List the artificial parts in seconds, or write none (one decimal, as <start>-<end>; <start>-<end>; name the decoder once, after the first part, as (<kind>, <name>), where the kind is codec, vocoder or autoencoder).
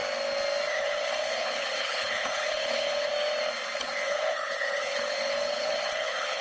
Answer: 0.7-3.1 (codec, HILCodec); 3.8-6.4